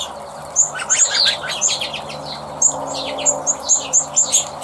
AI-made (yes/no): no